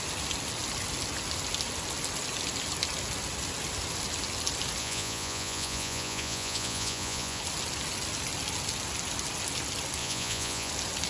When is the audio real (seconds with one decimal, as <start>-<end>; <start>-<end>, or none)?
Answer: 0.0-4.8; 7.4-10.0; 10.7-11.1